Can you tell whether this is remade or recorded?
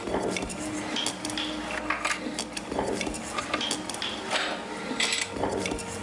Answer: recorded